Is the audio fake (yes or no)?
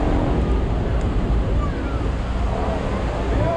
no